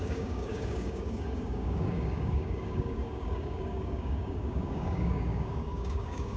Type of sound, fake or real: fake